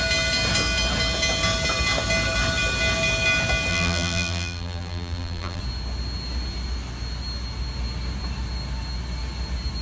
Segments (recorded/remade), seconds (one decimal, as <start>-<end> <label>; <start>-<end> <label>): 0.0-3.7 recorded; 3.7-5.6 remade; 5.6-9.8 recorded